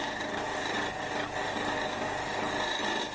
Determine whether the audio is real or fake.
real